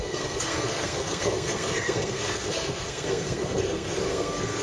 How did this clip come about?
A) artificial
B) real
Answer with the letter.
A